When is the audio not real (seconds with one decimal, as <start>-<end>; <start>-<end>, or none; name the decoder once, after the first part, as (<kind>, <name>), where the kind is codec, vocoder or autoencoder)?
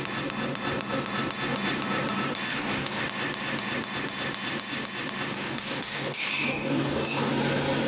2.5-3.0 (codec, DAC); 5.3-7.3